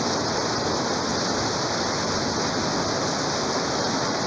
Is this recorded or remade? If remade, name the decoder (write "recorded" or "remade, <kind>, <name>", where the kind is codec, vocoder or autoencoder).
recorded